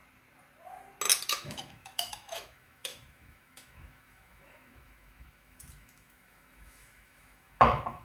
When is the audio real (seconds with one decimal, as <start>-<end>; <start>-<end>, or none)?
0.0-1.3